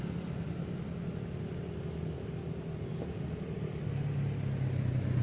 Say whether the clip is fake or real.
real